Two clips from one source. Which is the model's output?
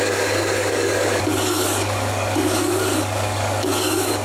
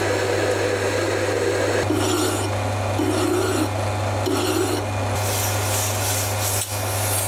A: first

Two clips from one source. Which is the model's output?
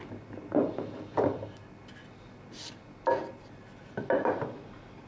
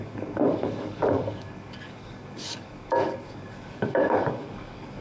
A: second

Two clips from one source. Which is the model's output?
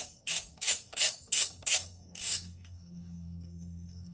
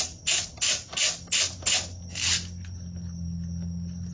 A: first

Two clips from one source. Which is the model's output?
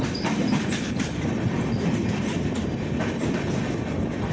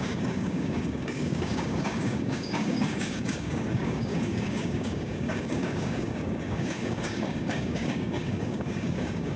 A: second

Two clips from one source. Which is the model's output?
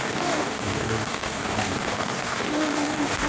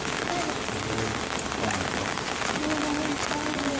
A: first